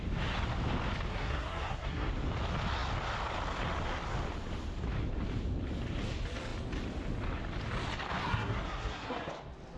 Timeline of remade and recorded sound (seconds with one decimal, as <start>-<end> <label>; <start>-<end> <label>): 0.0-1.1 recorded; 1.1-2.1 remade; 2.1-8.2 recorded; 8.2-9.3 remade; 9.3-9.8 recorded